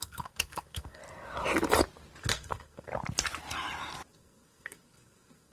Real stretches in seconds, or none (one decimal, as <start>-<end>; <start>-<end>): 1.0-2.2; 2.9-4.1